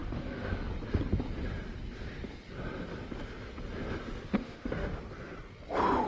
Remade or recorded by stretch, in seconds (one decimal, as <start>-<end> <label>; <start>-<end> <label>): 0.0-0.5 remade; 0.5-4.4 recorded; 4.4-5.0 remade; 5.0-6.1 recorded